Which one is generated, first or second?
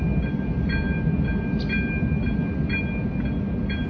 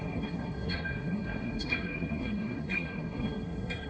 second